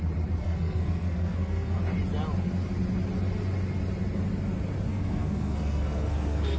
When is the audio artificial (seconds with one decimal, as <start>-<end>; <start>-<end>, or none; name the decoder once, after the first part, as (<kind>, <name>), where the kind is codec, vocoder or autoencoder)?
0.4-1.8 (codec, SNAC); 4.9-6.6